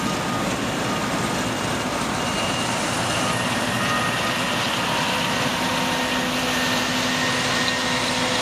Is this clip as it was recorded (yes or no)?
yes